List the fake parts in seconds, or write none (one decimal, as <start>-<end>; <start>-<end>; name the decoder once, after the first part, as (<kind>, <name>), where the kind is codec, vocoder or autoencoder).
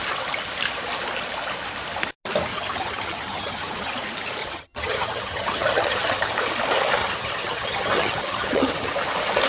2.5-3.9 (vocoder, HiFi-GAN); 4.4-6.3; 7.0-8.9